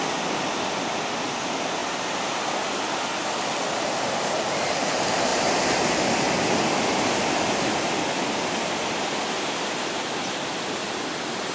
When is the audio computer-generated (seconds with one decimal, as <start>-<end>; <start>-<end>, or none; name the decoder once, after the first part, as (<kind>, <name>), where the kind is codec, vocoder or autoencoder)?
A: none